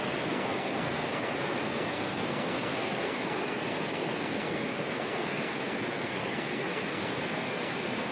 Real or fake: fake